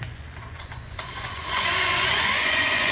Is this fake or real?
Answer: fake